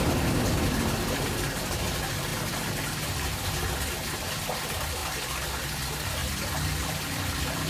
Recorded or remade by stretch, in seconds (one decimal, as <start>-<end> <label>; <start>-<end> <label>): 0.0-2.3 remade; 2.3-3.9 recorded; 3.9-6.2 remade; 6.2-6.9 recorded; 6.9-7.7 remade